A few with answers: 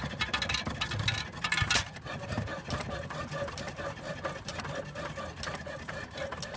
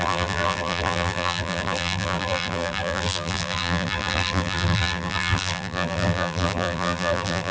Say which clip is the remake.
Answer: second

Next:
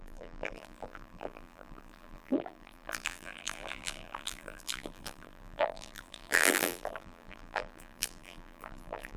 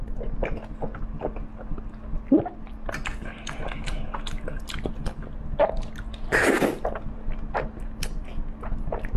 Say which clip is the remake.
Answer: first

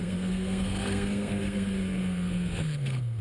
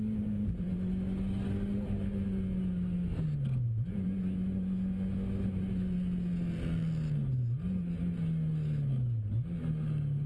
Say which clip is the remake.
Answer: first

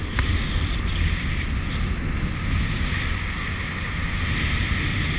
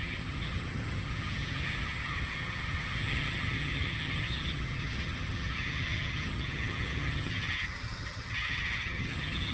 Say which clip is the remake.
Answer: second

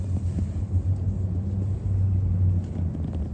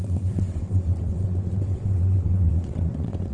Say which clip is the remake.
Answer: second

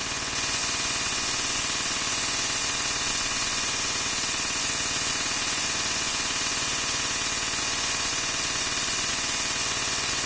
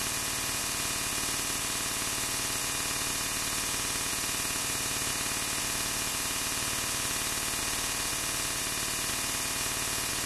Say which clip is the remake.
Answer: first